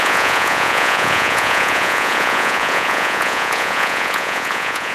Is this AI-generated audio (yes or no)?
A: yes